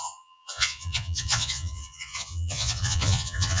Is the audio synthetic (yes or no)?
yes